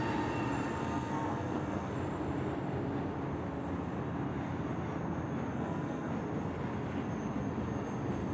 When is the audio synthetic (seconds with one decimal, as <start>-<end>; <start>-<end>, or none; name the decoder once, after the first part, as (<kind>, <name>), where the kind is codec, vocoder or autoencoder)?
0.8-1.9 (codec, SNAC); 5.5-6.1